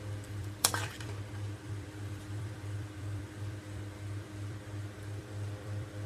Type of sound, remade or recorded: remade